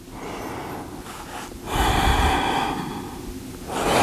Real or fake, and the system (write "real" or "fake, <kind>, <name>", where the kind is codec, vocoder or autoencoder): real